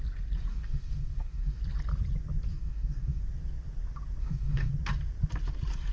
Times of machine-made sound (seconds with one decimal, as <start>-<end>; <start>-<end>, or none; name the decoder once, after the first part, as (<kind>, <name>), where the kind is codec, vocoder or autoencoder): 0.5-1.6 (codec, DAC); 2.5-3.2; 4.2-4.7